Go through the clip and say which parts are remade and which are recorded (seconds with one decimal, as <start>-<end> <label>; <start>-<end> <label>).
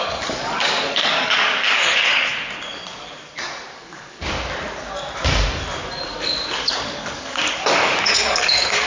0.0-2.3 remade; 2.3-3.7 recorded; 3.7-4.2 remade; 4.2-6.5 recorded; 6.5-8.9 remade